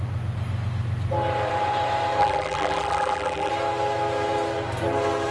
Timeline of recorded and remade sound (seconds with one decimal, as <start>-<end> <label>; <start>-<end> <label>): 0.0-2.2 recorded; 2.2-3.5 remade; 3.5-5.3 recorded